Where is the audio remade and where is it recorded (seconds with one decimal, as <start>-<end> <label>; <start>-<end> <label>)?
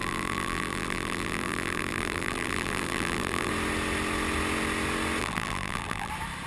0.0-3.5 remade; 3.5-5.2 recorded; 5.2-6.1 remade; 6.1-6.5 recorded